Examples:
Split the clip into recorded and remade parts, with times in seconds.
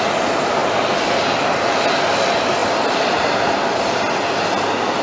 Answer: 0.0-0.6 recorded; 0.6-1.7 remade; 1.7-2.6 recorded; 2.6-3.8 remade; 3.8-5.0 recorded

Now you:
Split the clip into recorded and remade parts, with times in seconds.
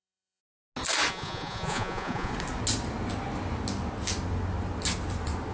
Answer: 0.0-0.4 remade; 0.4-1.1 recorded; 1.1-2.3 remade; 2.3-5.5 recorded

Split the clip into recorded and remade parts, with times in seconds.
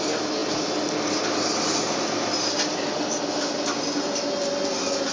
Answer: 0.0-5.1 recorded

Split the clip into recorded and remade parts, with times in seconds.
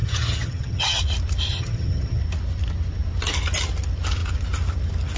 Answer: 0.0-1.0 remade; 1.0-1.5 recorded; 1.5-2.2 remade; 2.2-5.2 recorded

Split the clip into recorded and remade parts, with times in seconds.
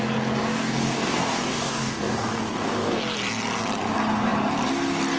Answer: 0.0-0.4 recorded; 0.4-3.0 remade; 3.0-5.2 recorded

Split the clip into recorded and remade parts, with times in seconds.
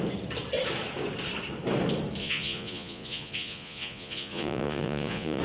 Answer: 0.0-2.2 recorded; 2.2-5.4 remade